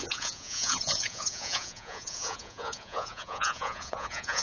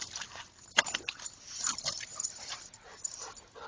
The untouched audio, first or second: second